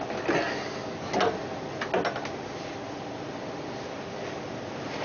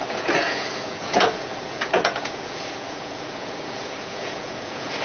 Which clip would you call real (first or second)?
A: first